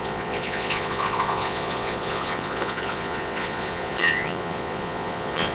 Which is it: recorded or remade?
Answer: remade